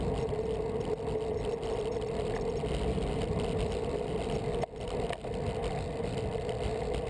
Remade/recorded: recorded